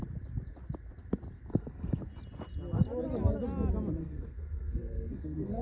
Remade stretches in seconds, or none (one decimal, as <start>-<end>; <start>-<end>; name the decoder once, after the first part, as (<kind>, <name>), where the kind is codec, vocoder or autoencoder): 1.5-2.0 (codec, SNAC); 4.0-5.6